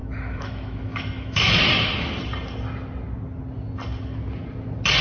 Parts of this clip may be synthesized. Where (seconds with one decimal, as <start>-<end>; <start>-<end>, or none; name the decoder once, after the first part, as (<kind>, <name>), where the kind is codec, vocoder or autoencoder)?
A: 0.0-1.5 (autoencoder, DAC-VAE)